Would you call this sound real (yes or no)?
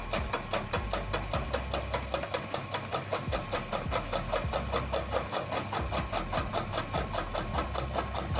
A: yes